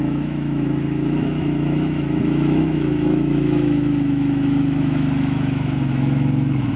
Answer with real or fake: fake